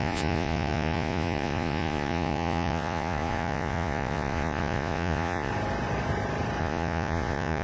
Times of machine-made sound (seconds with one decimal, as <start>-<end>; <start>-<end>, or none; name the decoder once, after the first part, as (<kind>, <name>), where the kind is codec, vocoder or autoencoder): 0.0-5.5 (vocoder, Vocos); 6.6-7.6